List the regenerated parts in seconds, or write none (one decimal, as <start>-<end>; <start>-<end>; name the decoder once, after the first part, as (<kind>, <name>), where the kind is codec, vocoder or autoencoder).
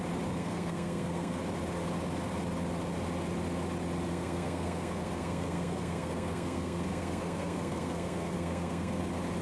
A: 0.4-1.4 (codec, SNAC); 4.1-9.0